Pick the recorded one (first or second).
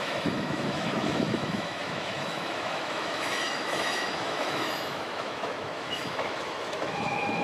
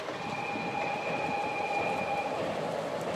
second